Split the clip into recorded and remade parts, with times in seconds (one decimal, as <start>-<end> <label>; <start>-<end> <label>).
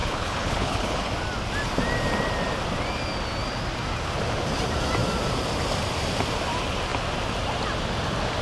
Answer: 0.0-1.1 remade; 1.1-8.4 recorded